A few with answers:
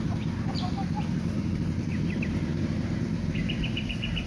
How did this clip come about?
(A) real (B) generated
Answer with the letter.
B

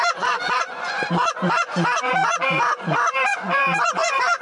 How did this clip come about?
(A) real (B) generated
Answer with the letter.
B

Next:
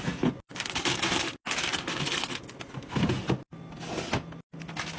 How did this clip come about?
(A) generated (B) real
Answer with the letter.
B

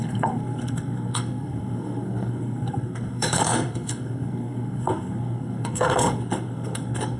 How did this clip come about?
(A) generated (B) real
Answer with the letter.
A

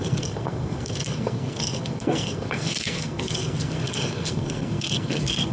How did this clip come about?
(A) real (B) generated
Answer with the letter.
B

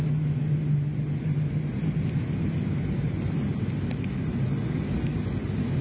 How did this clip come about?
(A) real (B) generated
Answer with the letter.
A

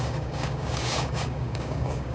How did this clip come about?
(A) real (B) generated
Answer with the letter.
B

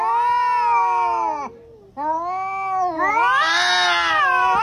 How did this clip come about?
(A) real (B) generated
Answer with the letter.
A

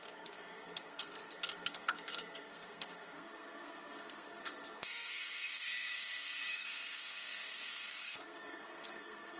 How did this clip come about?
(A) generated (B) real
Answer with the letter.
A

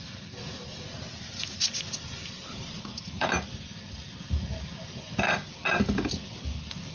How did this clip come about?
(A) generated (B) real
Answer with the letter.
A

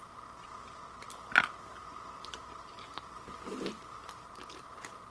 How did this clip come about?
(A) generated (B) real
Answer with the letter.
B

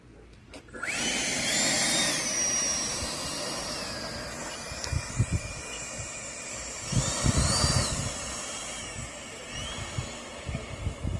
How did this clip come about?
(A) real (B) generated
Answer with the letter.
A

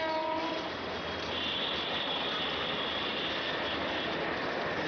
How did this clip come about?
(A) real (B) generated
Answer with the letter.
A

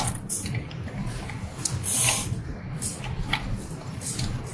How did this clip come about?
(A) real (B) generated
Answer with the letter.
A